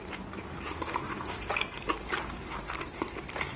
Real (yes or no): no